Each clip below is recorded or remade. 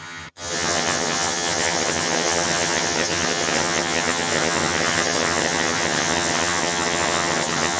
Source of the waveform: remade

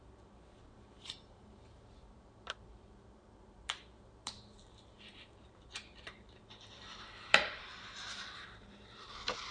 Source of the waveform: remade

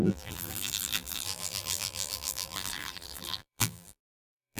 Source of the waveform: remade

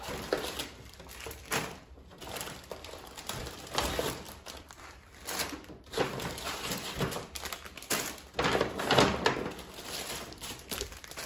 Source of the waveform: remade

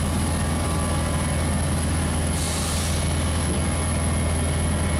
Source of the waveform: recorded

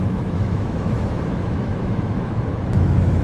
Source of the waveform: remade